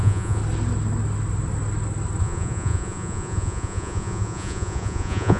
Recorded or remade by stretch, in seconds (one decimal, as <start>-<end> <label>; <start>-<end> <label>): 0.0-0.4 remade; 0.4-2.2 recorded; 2.2-5.4 remade